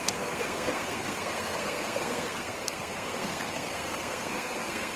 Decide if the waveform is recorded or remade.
remade